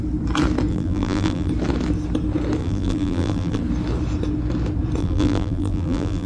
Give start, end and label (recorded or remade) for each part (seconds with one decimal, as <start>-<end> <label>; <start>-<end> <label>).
0.0-0.7 recorded; 0.7-1.5 remade; 1.5-2.6 recorded; 2.6-3.6 remade; 3.6-5.0 recorded; 5.0-6.3 remade